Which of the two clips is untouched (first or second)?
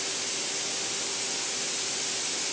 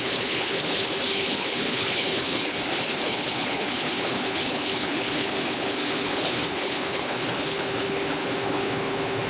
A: first